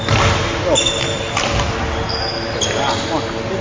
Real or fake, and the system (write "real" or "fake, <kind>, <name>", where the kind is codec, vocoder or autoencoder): real